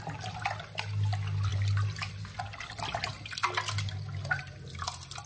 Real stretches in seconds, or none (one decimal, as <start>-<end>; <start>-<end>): 0.0-5.3